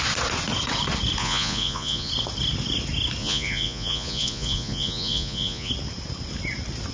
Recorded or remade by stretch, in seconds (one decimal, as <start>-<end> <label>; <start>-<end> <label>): 0.0-1.2 recorded; 1.2-2.1 remade; 2.1-3.2 recorded; 3.2-5.7 remade; 5.7-6.9 recorded